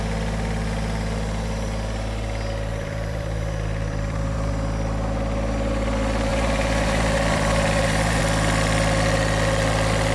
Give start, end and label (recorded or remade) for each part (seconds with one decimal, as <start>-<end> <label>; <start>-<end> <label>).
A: 0.0-2.7 recorded; 2.7-4.5 remade; 4.5-6.3 recorded; 6.3-8.2 remade; 8.2-10.1 recorded